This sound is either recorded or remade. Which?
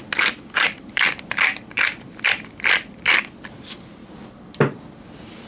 recorded